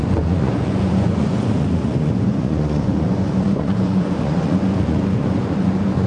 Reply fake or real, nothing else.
fake